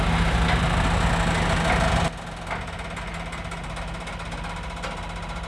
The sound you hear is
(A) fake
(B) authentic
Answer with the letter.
B